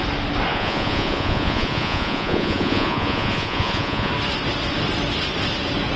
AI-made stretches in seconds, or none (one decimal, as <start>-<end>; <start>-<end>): 0.5-4.1